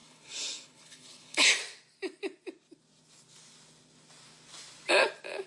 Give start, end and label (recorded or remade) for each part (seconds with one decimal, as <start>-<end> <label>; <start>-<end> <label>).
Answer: 0.0-1.5 remade; 1.5-5.5 recorded